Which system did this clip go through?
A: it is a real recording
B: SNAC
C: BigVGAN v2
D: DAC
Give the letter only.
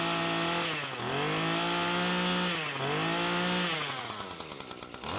A